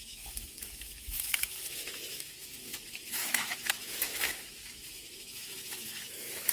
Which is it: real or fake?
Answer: fake